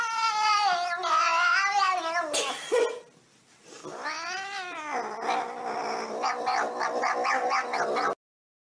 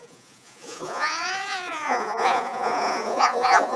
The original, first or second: first